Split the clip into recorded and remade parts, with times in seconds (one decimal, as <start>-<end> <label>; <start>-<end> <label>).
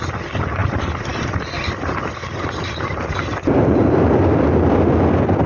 0.0-3.3 recorded; 3.3-3.8 remade; 3.8-5.5 recorded